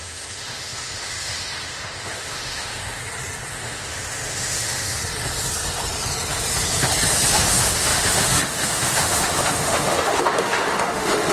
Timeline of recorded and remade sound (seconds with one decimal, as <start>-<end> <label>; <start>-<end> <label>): 0.0-3.0 remade; 3.0-3.5 recorded; 3.5-5.0 remade; 5.0-7.3 recorded; 7.3-11.3 remade